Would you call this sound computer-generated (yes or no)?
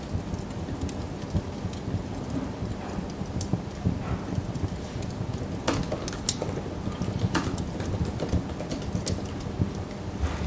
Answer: no